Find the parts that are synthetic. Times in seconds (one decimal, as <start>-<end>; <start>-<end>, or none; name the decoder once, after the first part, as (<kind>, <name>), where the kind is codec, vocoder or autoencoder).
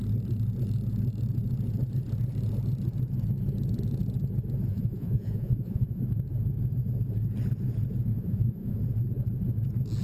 4.7-6.0 (vocoder, Vocos); 8.1-8.8